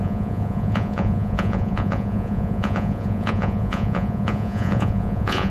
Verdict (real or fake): fake